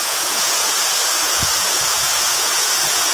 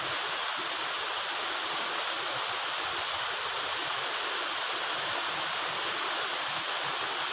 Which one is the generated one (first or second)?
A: first